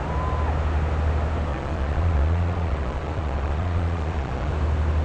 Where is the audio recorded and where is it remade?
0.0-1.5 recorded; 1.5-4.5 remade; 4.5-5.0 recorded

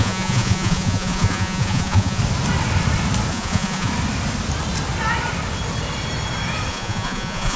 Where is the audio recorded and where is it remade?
0.0-2.2 remade; 2.2-3.3 recorded; 3.3-3.9 remade; 3.9-6.7 recorded; 6.7-7.6 remade

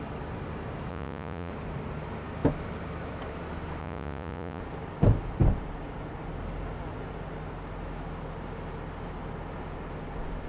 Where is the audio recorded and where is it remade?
0.0-0.9 recorded; 0.9-1.5 remade; 1.5-3.8 recorded; 3.8-4.6 remade; 4.6-10.5 recorded

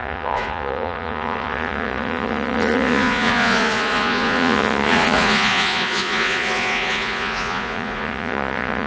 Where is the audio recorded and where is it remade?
0.0-8.9 remade

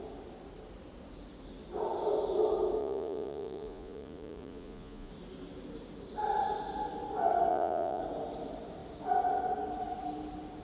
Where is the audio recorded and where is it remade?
0.0-2.8 recorded; 2.8-5.1 remade; 5.1-7.5 recorded; 7.5-8.0 remade; 8.0-10.6 recorded

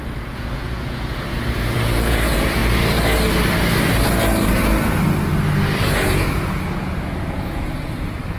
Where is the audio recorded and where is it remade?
0.0-2.6 remade; 2.6-5.8 recorded; 5.8-8.4 remade

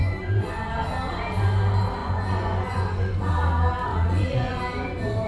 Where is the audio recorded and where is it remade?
0.0-0.7 remade; 0.7-2.0 recorded; 2.0-3.3 remade; 3.3-3.9 recorded; 3.9-4.6 remade; 4.6-5.3 recorded